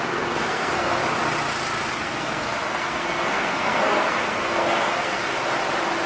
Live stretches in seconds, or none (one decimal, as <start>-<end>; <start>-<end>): 1.0-2.0; 5.2-6.1